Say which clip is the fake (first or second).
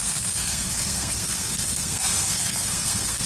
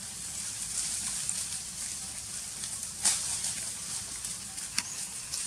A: first